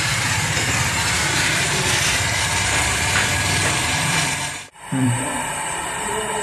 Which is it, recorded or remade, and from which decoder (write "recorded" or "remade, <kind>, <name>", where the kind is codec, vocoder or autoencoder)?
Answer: remade, vocoder, BigVGAN v2